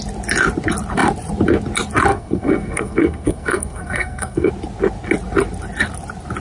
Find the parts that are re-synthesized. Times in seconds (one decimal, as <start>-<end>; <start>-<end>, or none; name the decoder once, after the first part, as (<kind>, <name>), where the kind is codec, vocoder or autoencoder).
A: 2.1-4.5 (codec, SNAC)